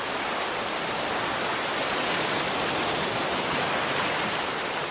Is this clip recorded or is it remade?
recorded